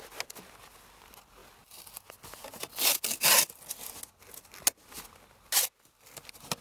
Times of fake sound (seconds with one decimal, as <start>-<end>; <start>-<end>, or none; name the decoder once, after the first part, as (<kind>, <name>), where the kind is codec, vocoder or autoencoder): none